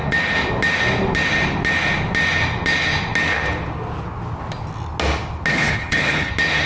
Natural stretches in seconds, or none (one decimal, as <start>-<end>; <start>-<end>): 0.0-5.5; 6.3-6.7